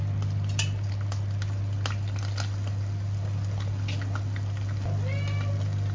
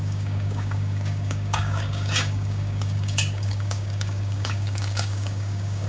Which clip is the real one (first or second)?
first